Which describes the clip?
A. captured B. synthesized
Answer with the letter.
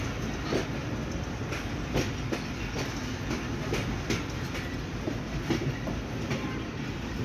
A